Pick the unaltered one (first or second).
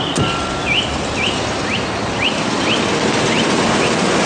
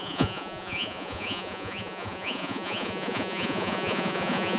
first